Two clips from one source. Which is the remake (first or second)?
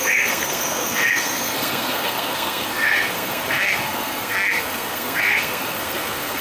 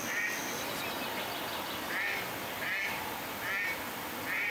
first